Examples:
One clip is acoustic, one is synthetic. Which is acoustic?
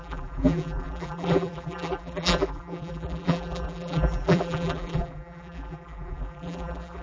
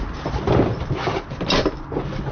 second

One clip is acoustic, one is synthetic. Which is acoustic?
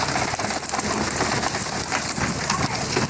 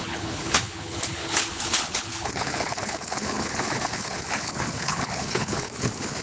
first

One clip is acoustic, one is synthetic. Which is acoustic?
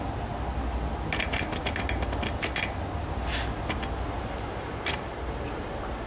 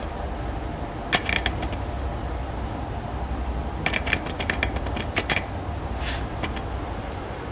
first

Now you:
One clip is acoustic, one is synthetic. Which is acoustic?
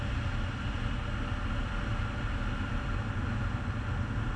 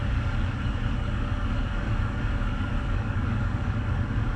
first